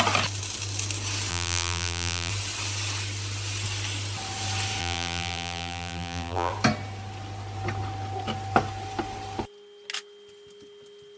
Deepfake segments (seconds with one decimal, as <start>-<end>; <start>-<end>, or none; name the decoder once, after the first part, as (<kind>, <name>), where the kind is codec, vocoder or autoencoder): 1.3-2.3 (vocoder, BigVGAN v2); 4.8-6.5